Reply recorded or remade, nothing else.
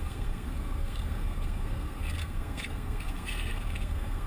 remade